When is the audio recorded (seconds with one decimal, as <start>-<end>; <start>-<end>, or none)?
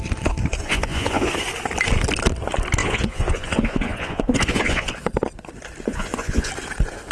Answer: 0.0-0.6; 1.3-2.8; 5.1-5.9; 6.5-7.1